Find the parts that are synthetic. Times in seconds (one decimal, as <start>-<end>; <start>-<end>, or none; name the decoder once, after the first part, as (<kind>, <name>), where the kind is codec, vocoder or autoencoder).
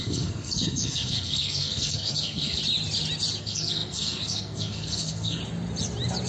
0.0-2.6 (codec, SNAC); 3.4-5.4